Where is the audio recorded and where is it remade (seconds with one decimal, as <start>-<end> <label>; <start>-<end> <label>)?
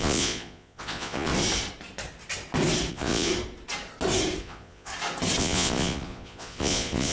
0.0-1.3 remade; 1.3-2.9 recorded; 2.9-3.3 remade; 3.3-4.4 recorded; 4.4-4.9 remade; 4.9-5.4 recorded; 5.4-7.1 remade